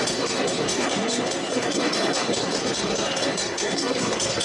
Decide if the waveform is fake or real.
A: fake